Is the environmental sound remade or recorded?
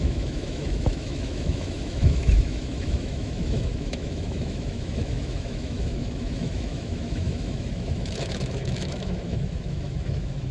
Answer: remade